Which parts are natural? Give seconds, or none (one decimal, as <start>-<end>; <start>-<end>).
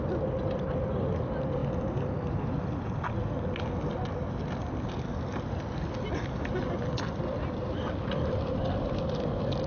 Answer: 0.0-9.7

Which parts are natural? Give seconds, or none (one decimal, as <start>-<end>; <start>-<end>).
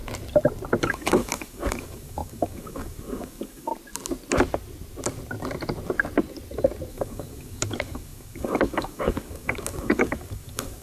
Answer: 0.0-0.8; 3.7-6.9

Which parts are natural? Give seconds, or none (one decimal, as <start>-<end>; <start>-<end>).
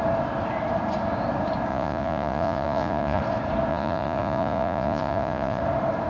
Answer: 0.0-1.7; 3.2-3.7; 5.6-6.1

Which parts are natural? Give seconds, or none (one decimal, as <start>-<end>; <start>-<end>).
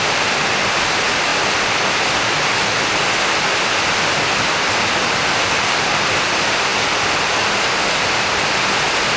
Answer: 0.0-9.2